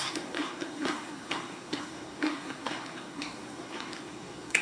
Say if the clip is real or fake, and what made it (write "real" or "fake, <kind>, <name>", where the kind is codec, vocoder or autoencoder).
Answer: fake, codec, SNAC